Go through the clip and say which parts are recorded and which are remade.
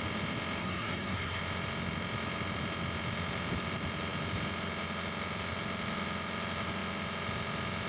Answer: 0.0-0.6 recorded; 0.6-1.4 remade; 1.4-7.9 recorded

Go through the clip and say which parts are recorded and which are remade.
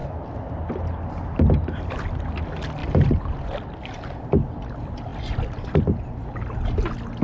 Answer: 0.0-7.2 recorded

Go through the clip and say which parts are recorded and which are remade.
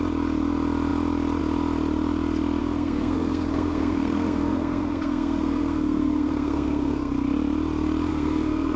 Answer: 0.0-2.6 recorded; 2.6-7.1 remade; 7.1-8.1 recorded; 8.1-8.8 remade